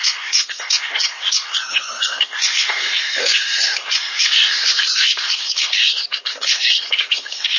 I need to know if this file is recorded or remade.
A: remade